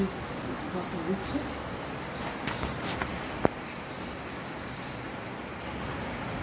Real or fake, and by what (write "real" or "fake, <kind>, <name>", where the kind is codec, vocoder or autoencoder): real